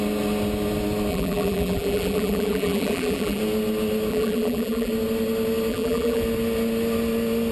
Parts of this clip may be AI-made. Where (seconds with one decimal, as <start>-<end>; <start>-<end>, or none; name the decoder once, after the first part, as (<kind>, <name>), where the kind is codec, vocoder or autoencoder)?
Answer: 1.1-3.4 (vocoder, BigVGAN v2); 4.1-4.9; 5.7-6.2